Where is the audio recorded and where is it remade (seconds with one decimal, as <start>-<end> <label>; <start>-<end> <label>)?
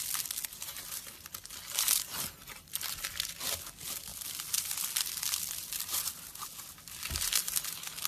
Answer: 0.0-8.1 recorded